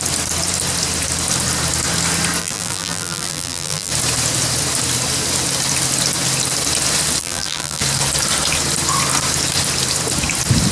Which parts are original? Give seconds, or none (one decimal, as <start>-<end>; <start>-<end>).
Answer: 0.0-2.4; 3.9-7.2; 7.8-10.7